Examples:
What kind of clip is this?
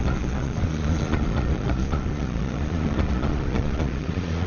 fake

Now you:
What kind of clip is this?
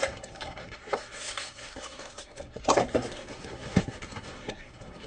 fake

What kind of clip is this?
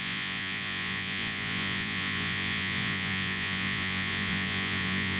fake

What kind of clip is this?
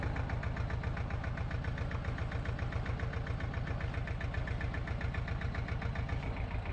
real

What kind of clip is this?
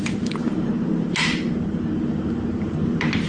fake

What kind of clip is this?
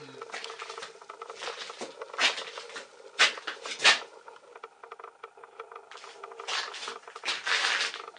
real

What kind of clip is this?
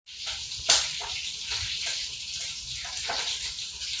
real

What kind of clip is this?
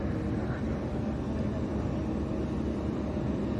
real